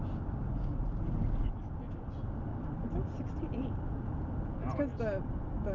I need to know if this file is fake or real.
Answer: real